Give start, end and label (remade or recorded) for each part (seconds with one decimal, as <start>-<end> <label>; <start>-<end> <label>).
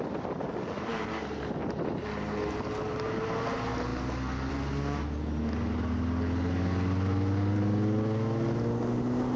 0.0-9.4 recorded